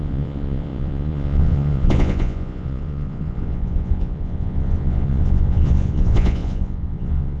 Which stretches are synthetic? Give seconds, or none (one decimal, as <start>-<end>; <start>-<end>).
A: 0.0-7.4